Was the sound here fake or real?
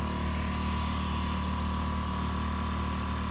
real